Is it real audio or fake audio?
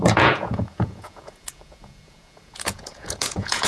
fake